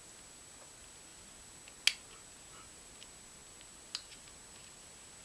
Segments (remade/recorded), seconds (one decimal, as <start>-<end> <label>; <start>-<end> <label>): 0.0-5.2 recorded